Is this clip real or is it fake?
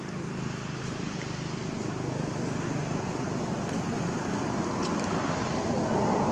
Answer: real